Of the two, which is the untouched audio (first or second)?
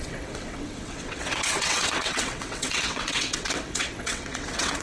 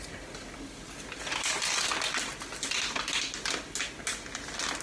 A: second